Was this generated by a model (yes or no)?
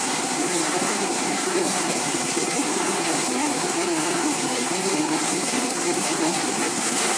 yes